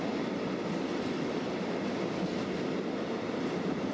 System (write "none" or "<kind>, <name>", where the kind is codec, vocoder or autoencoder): none